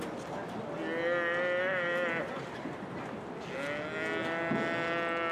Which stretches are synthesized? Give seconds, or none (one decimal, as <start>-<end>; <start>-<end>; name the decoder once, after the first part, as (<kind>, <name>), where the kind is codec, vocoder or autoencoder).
none